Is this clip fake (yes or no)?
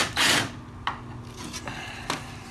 no